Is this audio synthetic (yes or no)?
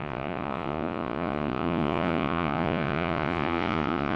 yes